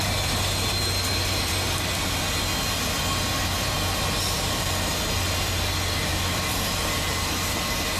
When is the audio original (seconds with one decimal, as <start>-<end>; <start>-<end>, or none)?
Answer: 0.0-6.1; 7.3-8.0